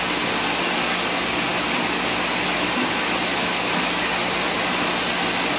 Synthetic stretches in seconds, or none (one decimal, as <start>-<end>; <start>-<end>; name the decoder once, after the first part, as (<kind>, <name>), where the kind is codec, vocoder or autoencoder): none